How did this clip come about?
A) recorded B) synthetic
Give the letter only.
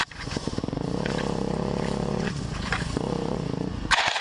B